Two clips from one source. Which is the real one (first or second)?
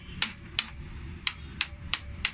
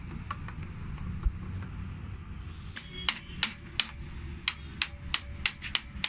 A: second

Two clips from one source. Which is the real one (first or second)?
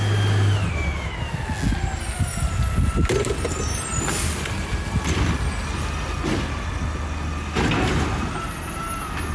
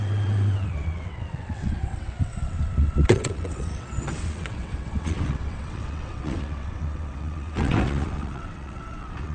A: first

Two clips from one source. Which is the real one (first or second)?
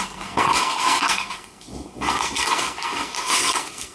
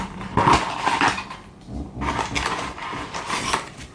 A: second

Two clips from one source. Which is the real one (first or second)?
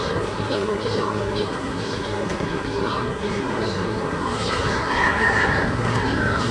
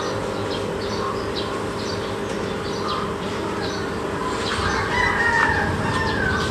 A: second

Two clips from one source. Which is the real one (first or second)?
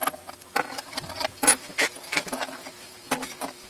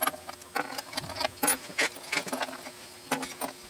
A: second